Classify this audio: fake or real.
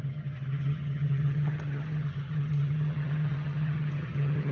fake